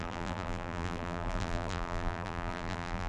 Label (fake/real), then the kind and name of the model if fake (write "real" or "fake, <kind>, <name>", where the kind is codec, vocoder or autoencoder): fake, vocoder, BigVGAN v2